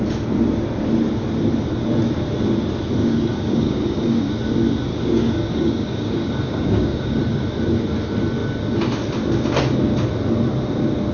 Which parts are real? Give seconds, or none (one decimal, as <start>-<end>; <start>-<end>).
0.0-3.0; 4.3-4.9; 7.2-11.1